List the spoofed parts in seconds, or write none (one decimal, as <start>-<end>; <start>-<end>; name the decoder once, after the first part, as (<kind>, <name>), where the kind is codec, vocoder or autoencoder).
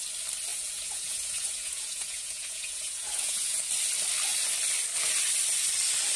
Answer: 0.5-3.6 (vocoder, Vocos)